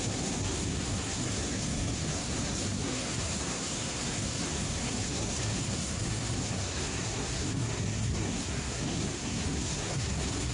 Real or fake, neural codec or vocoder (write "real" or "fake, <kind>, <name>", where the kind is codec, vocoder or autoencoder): fake, codec, SNAC